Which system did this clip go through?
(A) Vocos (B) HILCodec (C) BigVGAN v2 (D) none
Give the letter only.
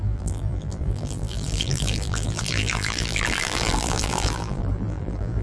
C